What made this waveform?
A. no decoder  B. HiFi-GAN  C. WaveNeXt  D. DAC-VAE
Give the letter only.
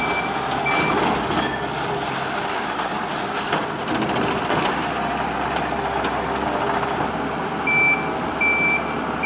A